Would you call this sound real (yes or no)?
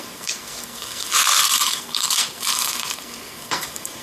no